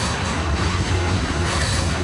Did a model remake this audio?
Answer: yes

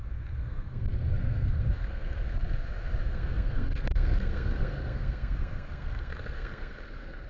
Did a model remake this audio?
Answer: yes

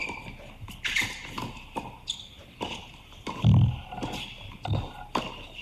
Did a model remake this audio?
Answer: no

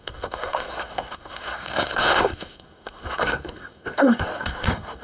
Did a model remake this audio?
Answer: yes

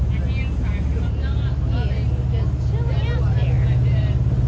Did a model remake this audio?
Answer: no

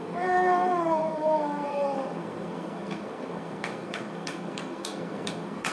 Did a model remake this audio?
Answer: yes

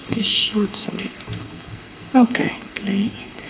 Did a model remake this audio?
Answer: yes